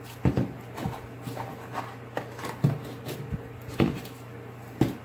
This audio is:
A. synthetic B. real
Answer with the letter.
B